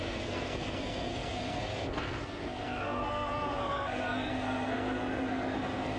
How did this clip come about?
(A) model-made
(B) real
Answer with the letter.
A